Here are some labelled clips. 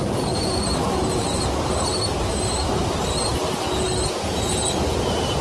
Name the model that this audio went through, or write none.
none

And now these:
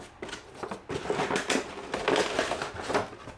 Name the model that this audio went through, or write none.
none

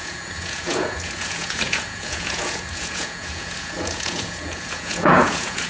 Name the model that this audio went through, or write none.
vocoder, Vocos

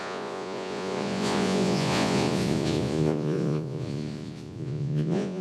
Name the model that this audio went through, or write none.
vocoder, Vocos